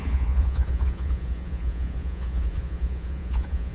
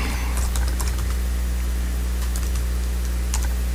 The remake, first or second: first